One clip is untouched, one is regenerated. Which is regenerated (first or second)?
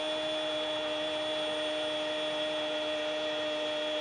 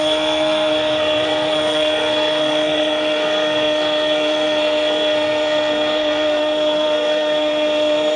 second